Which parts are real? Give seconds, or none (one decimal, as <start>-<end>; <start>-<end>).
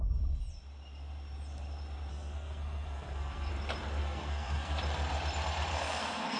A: 0.0-2.1; 3.5-4.0; 4.8-5.7